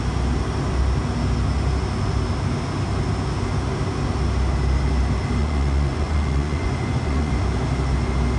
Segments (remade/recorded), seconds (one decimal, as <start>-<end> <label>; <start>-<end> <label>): 0.0-5.4 recorded; 5.4-7.3 remade; 7.3-8.4 recorded